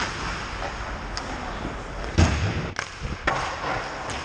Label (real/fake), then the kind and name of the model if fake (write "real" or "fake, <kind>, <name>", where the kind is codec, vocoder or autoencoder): real